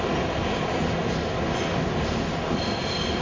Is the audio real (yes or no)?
yes